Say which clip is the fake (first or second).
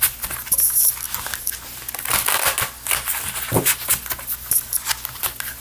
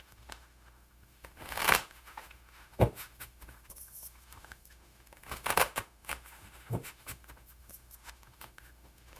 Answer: second